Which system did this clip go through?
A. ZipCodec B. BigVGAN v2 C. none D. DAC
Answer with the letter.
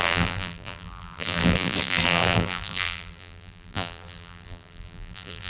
B